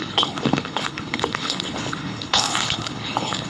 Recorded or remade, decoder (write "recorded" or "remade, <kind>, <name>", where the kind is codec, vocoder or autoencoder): remade, codec, HILCodec